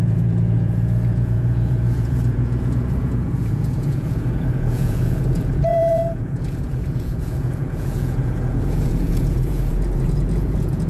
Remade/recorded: remade